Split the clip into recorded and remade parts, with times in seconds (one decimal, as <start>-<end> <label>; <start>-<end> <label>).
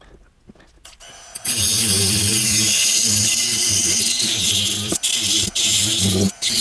0.0-6.6 recorded